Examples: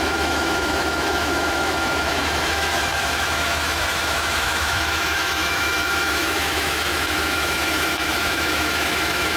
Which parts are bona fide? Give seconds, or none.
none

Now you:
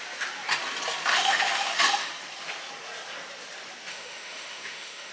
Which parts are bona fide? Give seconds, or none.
0.0-1.1; 2.1-3.9